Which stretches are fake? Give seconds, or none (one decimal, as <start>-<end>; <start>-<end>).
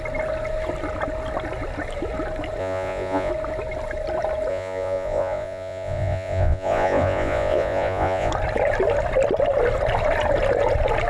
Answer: 2.6-3.3; 4.5-8.3